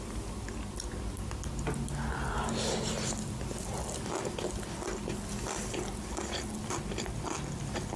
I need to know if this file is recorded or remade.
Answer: recorded